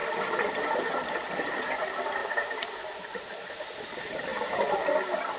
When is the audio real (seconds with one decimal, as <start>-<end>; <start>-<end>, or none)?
0.0-2.2; 3.6-4.3; 4.8-5.4